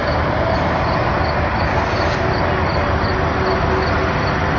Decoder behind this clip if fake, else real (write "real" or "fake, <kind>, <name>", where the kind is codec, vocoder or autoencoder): real